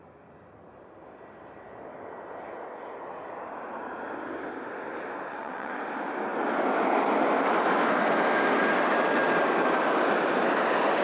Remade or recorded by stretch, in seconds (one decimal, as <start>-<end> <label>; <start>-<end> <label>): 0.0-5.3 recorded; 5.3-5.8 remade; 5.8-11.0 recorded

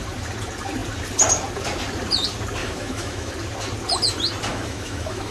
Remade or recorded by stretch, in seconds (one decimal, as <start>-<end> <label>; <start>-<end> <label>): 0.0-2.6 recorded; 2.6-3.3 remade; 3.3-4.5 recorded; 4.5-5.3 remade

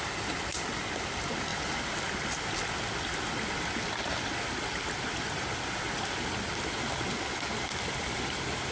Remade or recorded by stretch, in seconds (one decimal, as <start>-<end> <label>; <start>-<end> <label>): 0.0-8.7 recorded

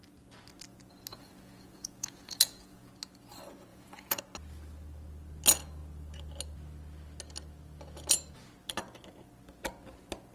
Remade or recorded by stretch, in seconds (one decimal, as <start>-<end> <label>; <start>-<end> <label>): 0.0-1.1 recorded; 1.1-2.9 remade; 2.9-3.7 recorded; 3.7-4.2 remade; 4.2-10.3 recorded

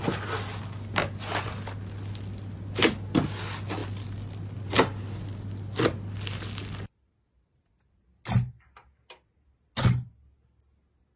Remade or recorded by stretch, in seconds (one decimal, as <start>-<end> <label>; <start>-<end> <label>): 0.0-11.2 recorded